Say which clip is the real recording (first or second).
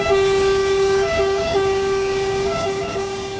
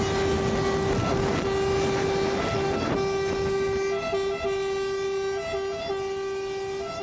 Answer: second